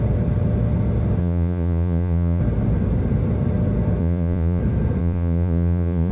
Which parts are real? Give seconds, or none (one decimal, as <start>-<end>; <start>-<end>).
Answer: 0.0-1.2; 2.4-4.0; 4.6-5.0